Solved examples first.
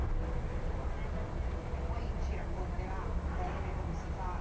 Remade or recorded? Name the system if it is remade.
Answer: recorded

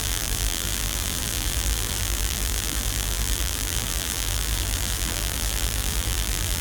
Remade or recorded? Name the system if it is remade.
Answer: remade, vocoder, BigVGAN v2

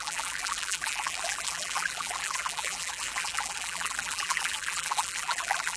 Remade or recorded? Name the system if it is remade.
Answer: remade, vocoder, BigVGAN v2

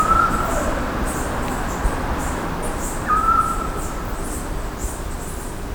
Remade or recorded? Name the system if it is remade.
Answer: remade, vocoder, BigVGAN v2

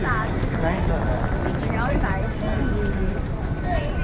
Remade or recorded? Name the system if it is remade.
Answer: recorded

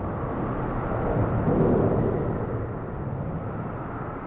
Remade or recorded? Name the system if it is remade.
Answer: recorded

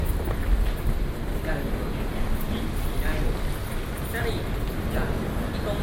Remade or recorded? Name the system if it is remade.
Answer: recorded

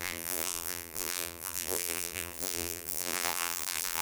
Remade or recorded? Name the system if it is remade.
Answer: remade, vocoder, BigVGAN v2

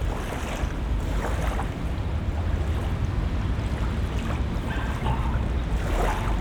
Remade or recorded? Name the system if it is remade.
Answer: recorded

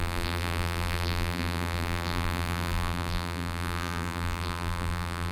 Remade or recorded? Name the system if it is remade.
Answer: remade, vocoder, BigVGAN v2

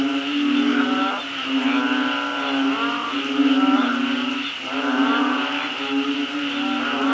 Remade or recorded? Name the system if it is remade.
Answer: recorded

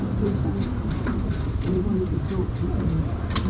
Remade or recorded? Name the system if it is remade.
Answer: remade, vocoder, BigVGAN v2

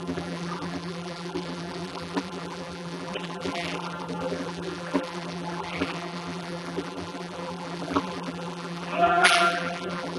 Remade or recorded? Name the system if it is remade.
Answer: remade, vocoder, BigVGAN v2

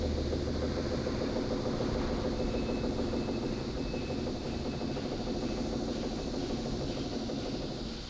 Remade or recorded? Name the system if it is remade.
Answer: recorded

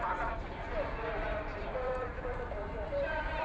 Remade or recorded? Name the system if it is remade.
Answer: remade, vocoder, BigVGAN v2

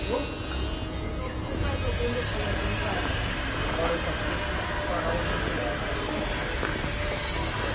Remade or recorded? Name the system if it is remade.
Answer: recorded